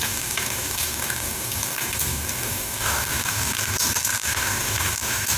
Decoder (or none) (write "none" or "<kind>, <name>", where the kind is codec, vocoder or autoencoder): codec, DAC